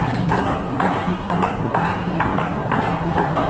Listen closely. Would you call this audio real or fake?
fake